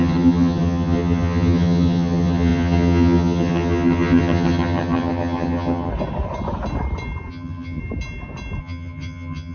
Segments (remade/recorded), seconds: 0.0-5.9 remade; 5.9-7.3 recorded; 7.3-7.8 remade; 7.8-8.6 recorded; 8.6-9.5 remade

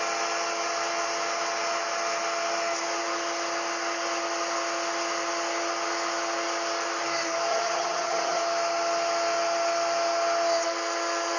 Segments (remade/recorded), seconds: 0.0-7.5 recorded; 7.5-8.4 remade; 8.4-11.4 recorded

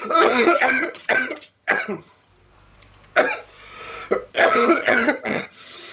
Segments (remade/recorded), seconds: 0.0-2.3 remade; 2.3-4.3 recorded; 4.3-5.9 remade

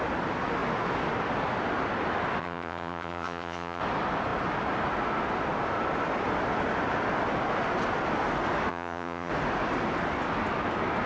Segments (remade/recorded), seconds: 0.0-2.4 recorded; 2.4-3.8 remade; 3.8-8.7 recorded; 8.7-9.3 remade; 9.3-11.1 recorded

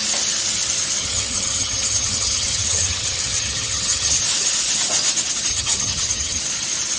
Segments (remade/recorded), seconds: 0.0-1.0 recorded; 1.0-4.2 remade; 4.2-5.5 recorded; 5.5-6.4 remade; 6.4-7.0 recorded